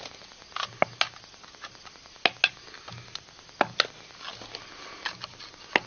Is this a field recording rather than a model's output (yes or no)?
yes